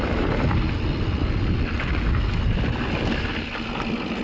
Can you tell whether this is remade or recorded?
recorded